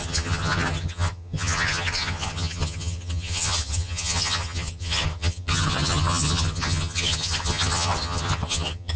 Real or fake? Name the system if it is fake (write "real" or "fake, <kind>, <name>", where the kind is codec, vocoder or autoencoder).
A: fake, vocoder, HiFi-GAN